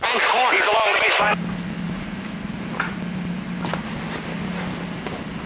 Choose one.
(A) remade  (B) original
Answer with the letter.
B